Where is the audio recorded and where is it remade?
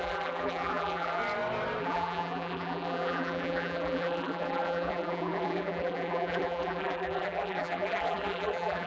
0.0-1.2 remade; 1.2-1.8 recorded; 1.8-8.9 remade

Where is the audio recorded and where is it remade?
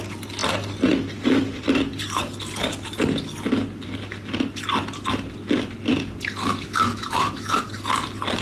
0.0-6.5 recorded; 6.5-7.6 remade; 7.6-8.4 recorded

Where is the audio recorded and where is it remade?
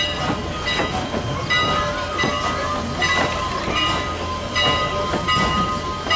0.0-6.2 recorded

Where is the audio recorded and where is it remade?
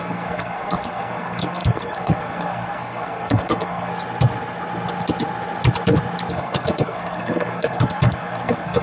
0.0-3.9 remade; 3.9-6.3 recorded; 6.3-8.8 remade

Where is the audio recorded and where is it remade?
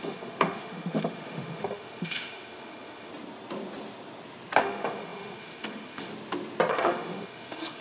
0.0-3.1 remade; 3.1-4.6 recorded; 4.6-6.1 remade; 6.1-6.7 recorded; 6.7-7.8 remade